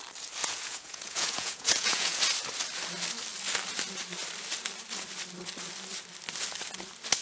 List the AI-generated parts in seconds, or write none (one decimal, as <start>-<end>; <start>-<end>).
0.4-2.2